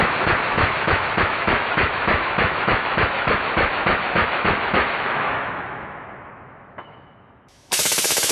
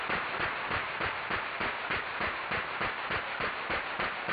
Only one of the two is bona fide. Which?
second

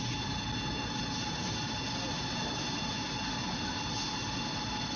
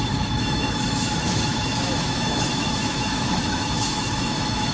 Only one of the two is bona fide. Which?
first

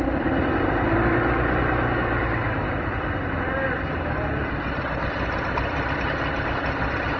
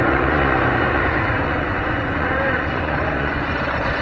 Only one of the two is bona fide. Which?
first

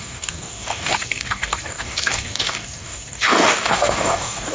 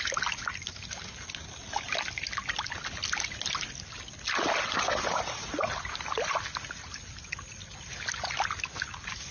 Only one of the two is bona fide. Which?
second